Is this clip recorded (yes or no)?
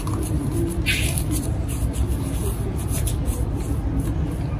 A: yes